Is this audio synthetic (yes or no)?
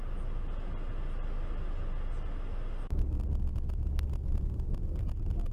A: no